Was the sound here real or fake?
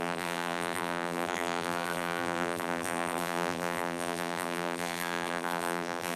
fake